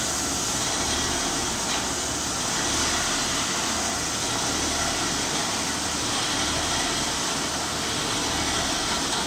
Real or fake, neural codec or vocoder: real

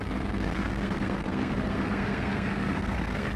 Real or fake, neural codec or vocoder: fake, codec, SNAC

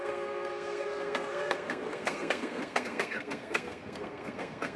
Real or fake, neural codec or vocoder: fake, codec, SNAC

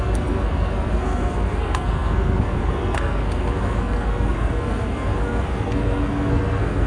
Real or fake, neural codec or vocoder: fake, codec, SNAC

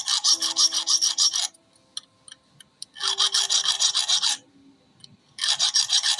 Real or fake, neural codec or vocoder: real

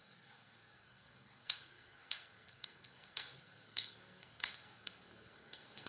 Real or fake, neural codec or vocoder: fake, codec, SNAC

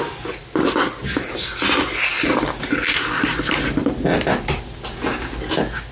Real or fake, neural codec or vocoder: real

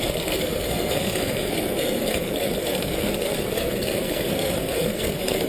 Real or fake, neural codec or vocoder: fake, codec, SNAC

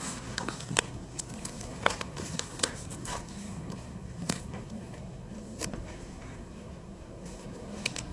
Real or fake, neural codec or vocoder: fake, codec, SNAC